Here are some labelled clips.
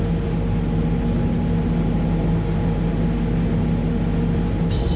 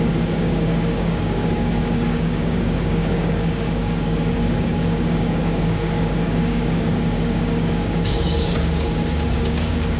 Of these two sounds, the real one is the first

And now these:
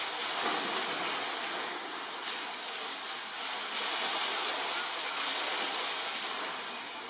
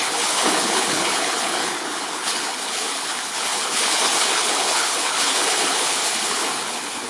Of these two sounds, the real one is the first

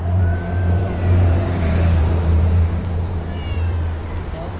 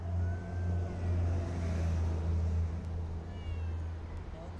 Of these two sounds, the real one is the second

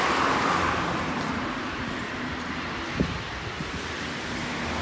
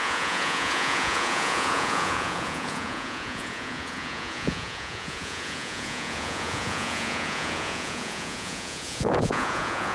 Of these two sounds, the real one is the first